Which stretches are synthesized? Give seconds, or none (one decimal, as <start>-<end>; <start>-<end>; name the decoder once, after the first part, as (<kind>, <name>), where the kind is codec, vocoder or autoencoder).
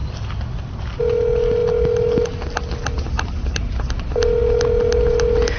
none